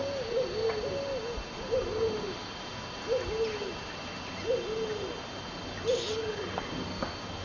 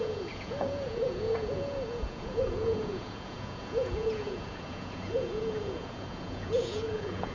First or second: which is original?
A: first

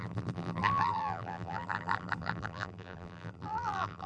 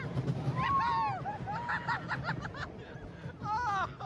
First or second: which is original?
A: second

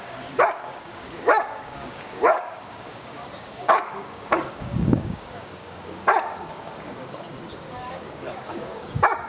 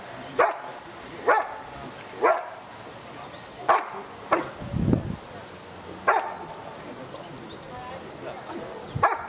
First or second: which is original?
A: second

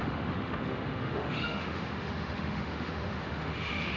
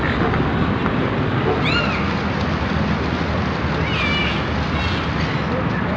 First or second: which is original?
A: second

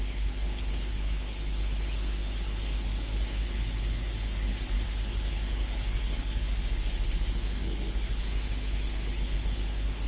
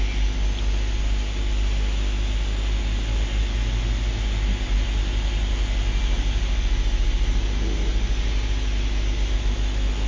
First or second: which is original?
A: second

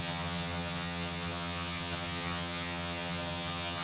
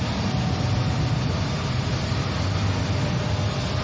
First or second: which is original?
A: second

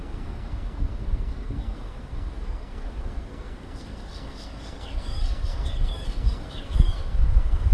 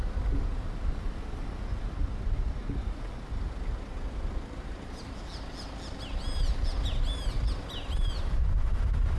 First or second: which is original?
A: second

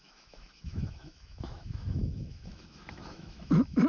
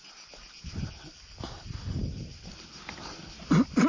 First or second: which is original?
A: second